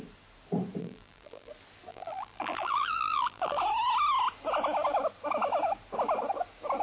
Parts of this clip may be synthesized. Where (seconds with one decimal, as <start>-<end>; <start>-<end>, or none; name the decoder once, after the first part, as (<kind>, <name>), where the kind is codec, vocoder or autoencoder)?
0.8-1.5 (vocoder, BigVGAN v2); 1.9-3.6